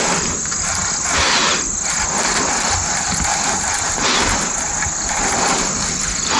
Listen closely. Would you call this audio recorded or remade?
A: recorded